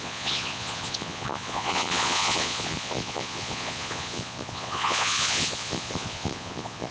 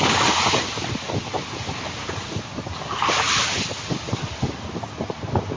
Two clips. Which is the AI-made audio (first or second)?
first